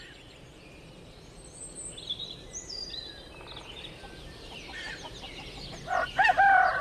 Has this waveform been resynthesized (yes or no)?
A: no